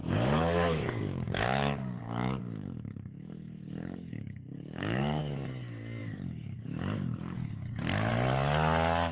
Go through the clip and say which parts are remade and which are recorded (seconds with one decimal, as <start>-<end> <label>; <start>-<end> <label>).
0.0-5.2 remade; 5.2-6.0 recorded; 6.0-8.1 remade; 8.1-9.1 recorded